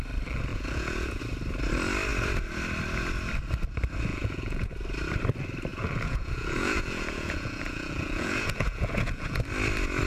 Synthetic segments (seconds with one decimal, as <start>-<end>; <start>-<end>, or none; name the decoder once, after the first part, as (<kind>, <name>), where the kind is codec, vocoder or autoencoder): 0.5-1.2 (vocoder, Vocos); 4.1-4.7; 5.7-9.4